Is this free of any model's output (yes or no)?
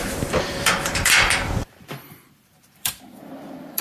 no